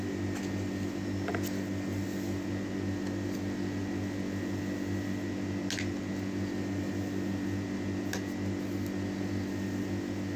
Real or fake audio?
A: real